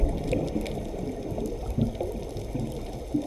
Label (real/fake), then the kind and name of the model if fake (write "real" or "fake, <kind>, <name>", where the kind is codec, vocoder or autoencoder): real